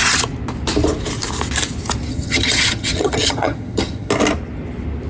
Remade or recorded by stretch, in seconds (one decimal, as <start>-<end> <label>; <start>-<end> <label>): 0.0-2.1 recorded; 2.1-4.1 remade; 4.1-5.1 recorded